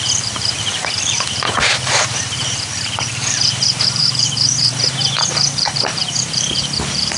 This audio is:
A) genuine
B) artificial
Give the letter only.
B